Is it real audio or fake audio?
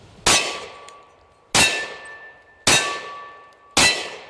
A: real